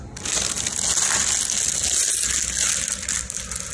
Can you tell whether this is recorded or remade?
recorded